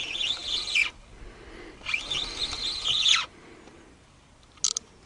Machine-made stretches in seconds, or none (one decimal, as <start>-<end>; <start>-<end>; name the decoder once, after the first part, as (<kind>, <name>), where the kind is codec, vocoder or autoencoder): none